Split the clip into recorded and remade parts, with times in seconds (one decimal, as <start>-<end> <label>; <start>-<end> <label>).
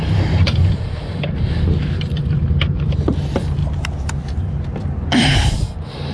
0.0-3.6 remade; 3.6-4.2 recorded; 4.2-6.1 remade